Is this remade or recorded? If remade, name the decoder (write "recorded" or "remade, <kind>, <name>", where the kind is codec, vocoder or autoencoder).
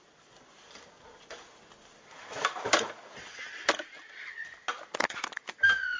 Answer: recorded